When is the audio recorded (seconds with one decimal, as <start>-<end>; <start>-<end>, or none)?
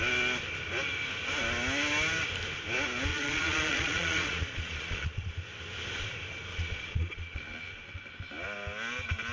0.0-3.1; 5.3-6.5; 7.4-9.3